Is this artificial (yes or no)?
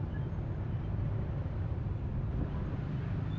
no